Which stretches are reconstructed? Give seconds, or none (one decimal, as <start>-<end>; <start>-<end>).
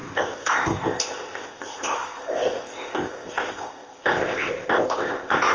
0.0-5.5